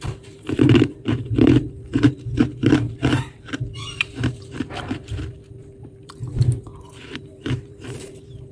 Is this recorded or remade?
remade